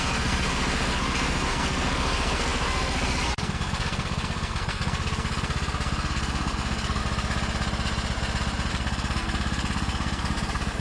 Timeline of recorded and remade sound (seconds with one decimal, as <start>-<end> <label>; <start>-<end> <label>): 0.0-7.0 remade; 7.0-8.7 recorded; 8.7-10.8 remade